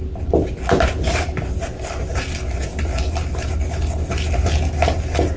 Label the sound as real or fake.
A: real